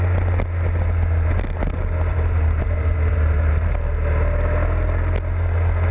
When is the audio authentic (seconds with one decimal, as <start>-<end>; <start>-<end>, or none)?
0.0-2.1; 3.5-5.9